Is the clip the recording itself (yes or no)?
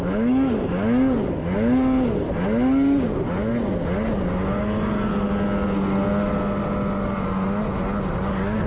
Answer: yes